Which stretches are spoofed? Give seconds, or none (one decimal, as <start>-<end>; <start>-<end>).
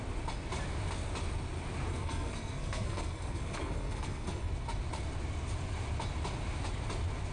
1.9-4.5